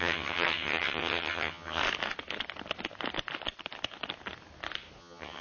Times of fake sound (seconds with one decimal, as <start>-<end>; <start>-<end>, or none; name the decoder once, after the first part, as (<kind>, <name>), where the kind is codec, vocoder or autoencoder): 0.0-1.8 (vocoder, HiFi-GAN); 5.0-5.4